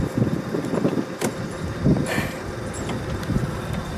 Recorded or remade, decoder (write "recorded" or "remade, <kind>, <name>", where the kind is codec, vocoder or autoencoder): recorded